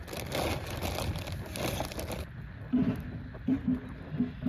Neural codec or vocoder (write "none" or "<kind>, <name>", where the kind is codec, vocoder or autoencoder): none